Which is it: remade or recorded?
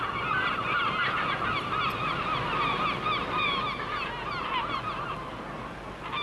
recorded